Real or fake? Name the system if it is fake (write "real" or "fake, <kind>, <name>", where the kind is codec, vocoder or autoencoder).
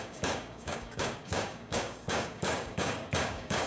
fake, codec, DAC